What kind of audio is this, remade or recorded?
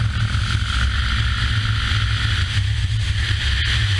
recorded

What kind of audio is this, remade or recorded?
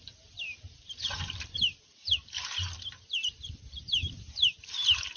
remade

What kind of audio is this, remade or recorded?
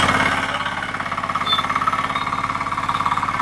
recorded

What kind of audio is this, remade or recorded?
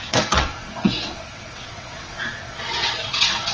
remade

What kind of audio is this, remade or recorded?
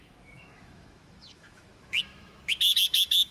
remade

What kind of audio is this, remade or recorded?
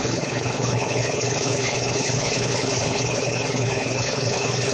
remade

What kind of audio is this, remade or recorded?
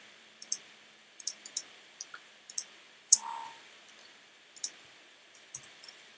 remade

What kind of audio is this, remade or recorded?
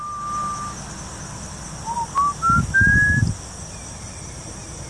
recorded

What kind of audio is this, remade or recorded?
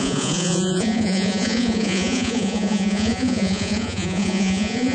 remade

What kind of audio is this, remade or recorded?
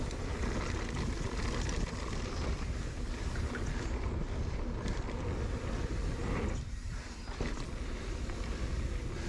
recorded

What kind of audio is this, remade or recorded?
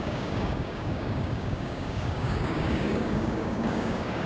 remade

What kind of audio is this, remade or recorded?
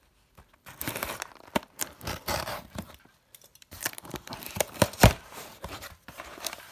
remade